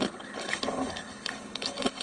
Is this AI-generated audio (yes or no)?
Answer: yes